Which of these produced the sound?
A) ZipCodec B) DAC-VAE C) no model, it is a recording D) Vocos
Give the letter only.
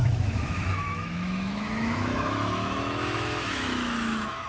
B